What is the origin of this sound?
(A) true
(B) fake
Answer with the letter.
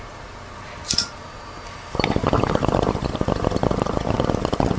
A